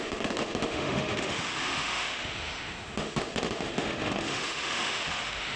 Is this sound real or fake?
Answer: fake